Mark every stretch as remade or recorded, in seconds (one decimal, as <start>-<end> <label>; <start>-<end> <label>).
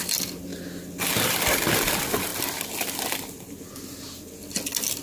0.0-5.0 recorded